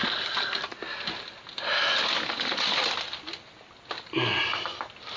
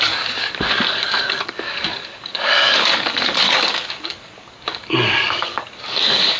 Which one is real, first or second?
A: first